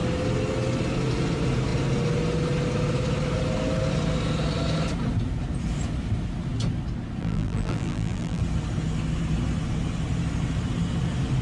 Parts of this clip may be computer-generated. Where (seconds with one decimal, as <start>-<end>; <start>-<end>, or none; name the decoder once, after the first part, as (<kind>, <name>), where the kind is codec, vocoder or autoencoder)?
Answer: 7.2-8.4 (vocoder, BigVGAN v2)